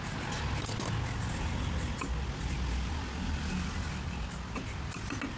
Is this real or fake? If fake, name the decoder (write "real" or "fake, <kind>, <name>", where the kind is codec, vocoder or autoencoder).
real